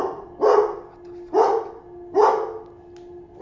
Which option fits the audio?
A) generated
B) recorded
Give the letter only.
B